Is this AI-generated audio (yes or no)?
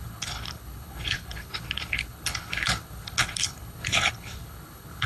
yes